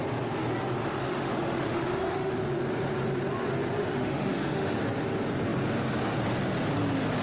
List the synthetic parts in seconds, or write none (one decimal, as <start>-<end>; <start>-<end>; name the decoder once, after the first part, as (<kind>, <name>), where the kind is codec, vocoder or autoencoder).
0.8-2.3 (autoencoder, DAC-VAE); 3.8-4.8